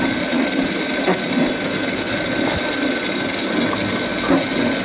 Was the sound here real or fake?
real